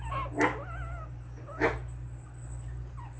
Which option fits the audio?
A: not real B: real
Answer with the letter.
B